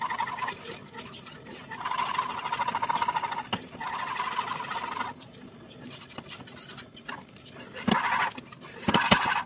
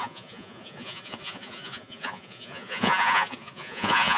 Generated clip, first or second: second